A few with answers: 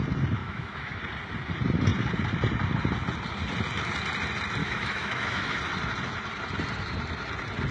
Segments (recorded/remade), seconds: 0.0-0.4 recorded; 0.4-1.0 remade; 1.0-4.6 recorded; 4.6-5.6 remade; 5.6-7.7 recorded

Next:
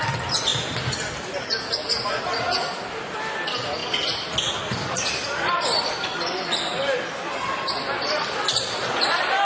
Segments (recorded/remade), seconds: 0.0-9.4 recorded

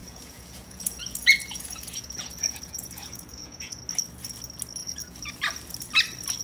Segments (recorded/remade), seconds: 0.0-3.8 remade; 3.8-4.8 recorded; 4.8-5.3 remade; 5.3-6.4 recorded

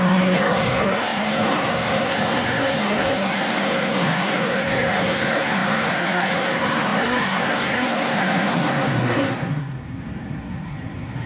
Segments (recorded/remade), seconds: 0.0-11.3 remade